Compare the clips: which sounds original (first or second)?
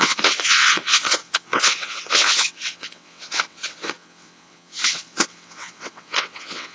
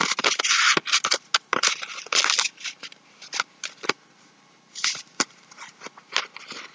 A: second